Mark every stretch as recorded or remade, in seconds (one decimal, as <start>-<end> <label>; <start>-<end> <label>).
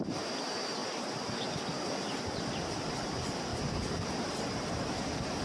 0.0-5.4 remade